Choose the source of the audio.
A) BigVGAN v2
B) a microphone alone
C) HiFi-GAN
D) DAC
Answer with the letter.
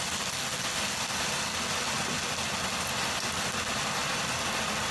B